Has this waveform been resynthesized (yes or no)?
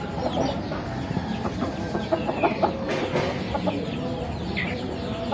no